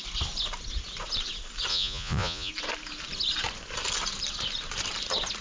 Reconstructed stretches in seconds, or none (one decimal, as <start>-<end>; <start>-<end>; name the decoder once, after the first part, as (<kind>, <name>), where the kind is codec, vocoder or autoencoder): 1.7-2.5 (vocoder, Vocos)